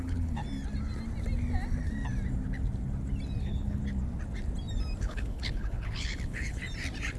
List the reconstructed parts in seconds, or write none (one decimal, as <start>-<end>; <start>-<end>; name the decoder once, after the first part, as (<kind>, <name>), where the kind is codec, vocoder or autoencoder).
0.0-0.4 (codec, HILCodec); 3.4-3.8; 5.0-6.6